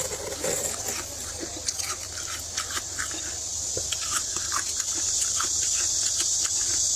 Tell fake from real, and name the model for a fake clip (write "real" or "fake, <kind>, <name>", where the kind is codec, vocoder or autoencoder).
real